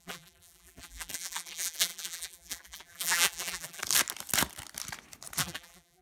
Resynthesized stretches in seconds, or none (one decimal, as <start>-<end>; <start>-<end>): 0.0-3.8; 5.4-6.0

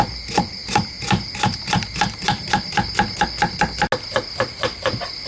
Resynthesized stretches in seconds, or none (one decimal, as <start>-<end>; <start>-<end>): none

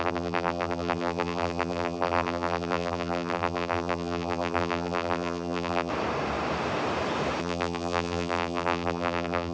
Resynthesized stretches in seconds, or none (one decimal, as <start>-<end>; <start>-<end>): 0.0-5.9; 7.4-9.5

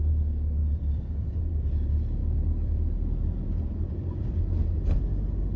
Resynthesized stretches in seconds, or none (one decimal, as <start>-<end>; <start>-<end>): 0.6-1.4; 2.2-4.2

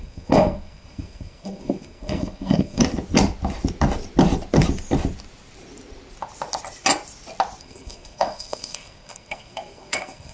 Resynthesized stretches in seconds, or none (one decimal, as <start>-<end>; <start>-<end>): 0.0-2.8; 7.6-10.3

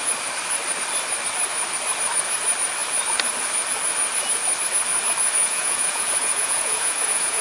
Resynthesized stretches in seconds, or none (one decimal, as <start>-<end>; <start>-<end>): 5.4-7.4